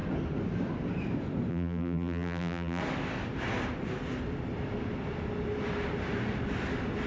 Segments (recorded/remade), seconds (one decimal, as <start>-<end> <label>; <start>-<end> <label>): 0.0-1.5 recorded; 1.5-2.8 remade; 2.8-7.1 recorded